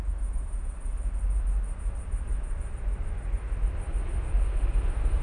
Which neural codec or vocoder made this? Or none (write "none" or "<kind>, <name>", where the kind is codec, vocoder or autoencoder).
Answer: none